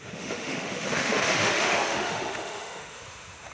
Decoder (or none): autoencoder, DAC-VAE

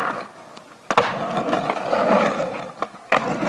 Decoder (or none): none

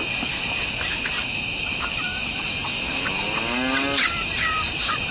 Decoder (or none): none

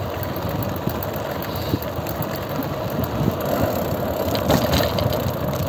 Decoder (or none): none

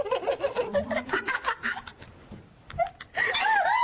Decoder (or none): none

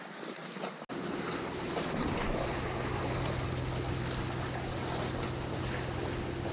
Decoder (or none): none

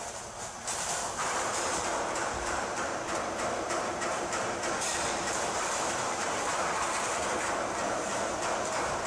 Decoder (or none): vocoder, BigVGAN v2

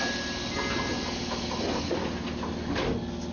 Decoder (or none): none